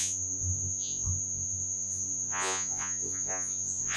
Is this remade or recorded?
remade